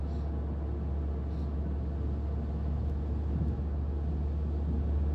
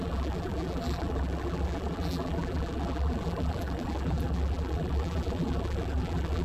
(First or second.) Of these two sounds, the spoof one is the second